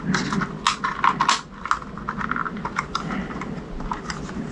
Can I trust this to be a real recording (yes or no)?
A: yes